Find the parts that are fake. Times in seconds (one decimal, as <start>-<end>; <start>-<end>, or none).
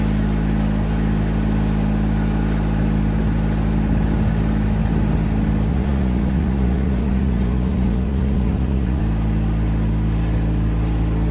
5.7-9.0